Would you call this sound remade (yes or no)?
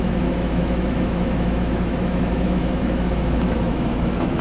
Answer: yes